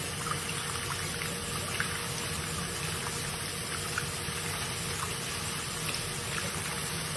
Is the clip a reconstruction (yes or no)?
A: no